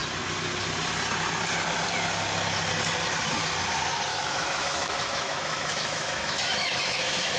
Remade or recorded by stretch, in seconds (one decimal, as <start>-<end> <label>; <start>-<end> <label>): 0.0-4.1 recorded; 4.1-7.4 remade